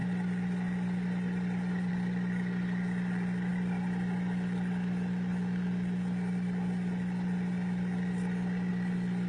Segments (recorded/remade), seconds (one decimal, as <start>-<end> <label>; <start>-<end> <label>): 0.0-9.3 recorded